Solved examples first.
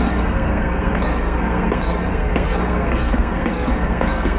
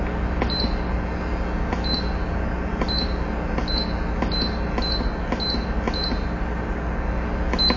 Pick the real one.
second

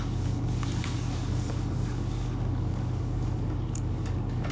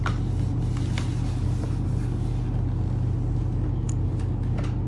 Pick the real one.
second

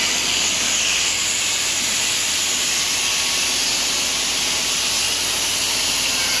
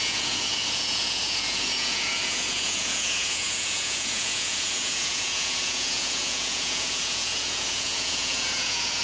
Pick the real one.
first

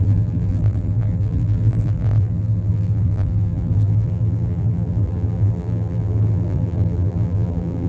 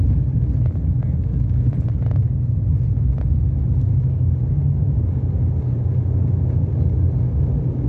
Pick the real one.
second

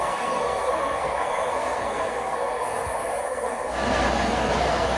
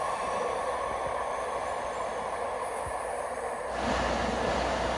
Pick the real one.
second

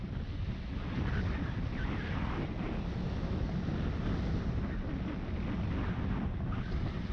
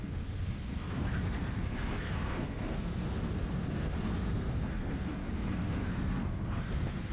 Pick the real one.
first